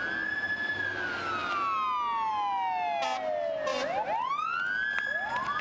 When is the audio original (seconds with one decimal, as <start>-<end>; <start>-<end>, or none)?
0.0-5.6